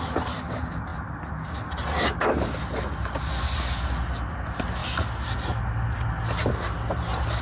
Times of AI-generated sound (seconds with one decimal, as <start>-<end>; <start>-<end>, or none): none